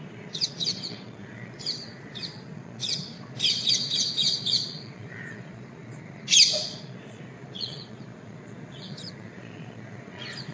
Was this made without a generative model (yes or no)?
no